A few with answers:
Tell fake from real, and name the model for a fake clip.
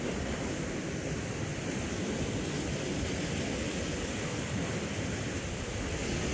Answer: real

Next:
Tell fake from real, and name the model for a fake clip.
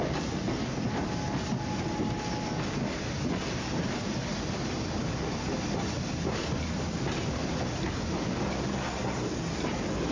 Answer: real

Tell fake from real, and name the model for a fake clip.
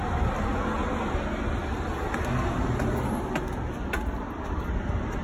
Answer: real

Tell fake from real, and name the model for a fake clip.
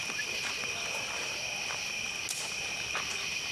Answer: real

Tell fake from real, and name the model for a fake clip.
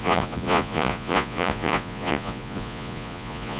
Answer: fake, vocoder, Vocos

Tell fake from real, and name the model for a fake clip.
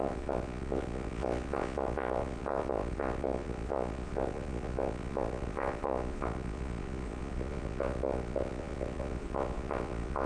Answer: fake, vocoder, Vocos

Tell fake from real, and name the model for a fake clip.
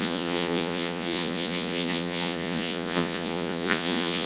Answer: fake, vocoder, Vocos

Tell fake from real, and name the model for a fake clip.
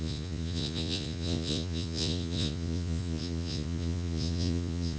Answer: fake, vocoder, Vocos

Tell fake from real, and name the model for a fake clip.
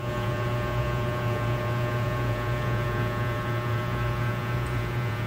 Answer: fake, vocoder, Vocos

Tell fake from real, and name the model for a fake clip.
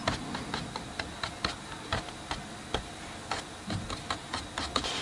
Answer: real